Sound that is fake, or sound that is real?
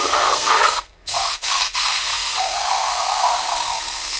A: fake